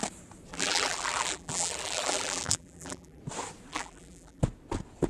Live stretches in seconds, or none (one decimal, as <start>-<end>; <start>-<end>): 0.0-0.5; 3.2-3.7; 4.4-5.1